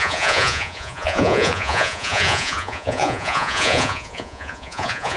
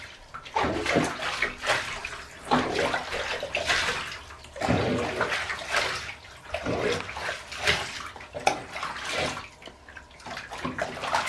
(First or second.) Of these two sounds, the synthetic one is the first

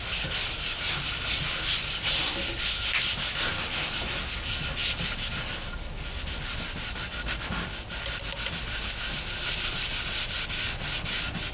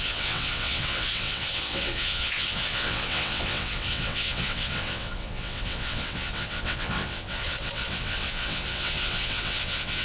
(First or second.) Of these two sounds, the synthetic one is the second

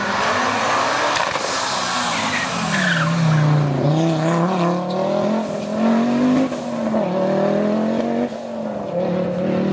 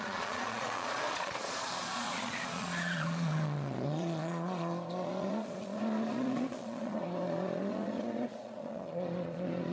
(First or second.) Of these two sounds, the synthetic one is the second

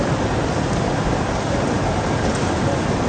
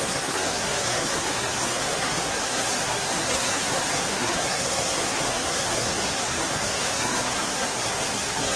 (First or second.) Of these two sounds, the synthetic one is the second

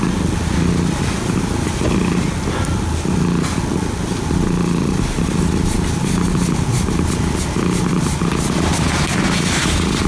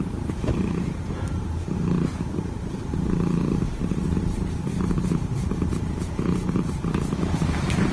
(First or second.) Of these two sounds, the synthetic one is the second